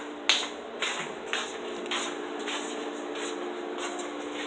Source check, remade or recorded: recorded